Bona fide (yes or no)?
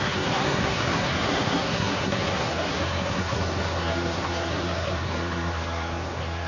no